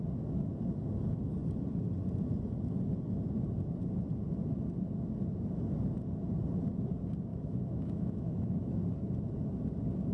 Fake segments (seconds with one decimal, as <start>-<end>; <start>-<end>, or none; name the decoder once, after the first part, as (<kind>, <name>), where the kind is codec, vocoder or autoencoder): 7.3-8.8 (autoencoder, DAC-VAE)